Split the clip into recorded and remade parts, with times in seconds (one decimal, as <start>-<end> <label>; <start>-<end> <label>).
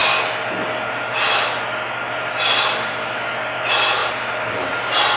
0.0-4.0 recorded; 4.0-4.6 remade; 4.6-5.2 recorded